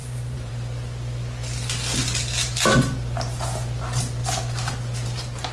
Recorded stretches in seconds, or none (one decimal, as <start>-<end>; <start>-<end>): 0.5-5.5